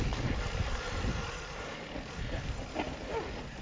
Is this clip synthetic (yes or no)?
no